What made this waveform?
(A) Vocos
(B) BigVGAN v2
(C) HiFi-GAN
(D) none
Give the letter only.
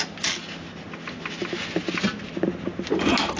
D